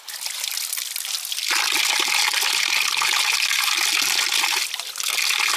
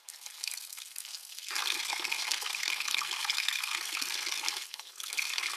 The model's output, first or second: second